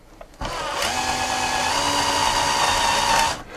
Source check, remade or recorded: recorded